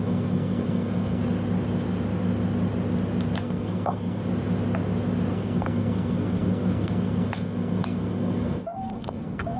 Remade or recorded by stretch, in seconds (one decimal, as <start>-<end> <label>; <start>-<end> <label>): 0.0-1.2 remade; 1.2-3.4 recorded; 3.4-4.2 remade; 4.2-5.3 recorded; 5.3-9.6 remade